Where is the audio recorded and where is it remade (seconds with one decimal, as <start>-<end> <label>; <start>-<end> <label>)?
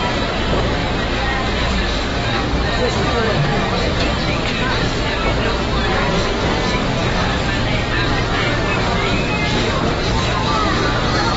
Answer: 0.0-2.1 recorded; 2.1-3.8 remade; 3.8-8.7 recorded; 8.7-9.3 remade; 9.3-11.4 recorded